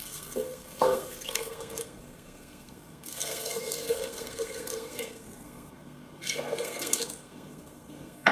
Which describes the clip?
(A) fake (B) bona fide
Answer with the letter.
A